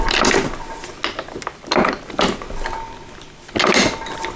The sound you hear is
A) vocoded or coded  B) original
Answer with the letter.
B